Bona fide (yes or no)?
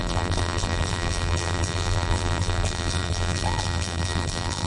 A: no